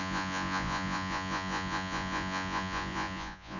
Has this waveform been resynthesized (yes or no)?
yes